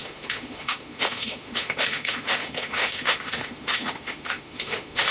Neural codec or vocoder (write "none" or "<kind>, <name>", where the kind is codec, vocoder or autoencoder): autoencoder, DAC-VAE